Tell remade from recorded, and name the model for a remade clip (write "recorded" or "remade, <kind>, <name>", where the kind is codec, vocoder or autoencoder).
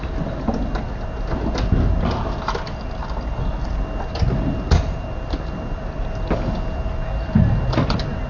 recorded